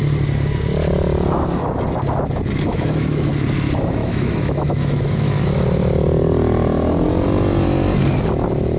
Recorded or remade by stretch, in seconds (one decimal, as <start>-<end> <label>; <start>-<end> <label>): 0.0-2.7 recorded; 2.7-3.3 remade; 3.3-4.0 recorded; 4.0-5.6 remade; 5.6-8.8 recorded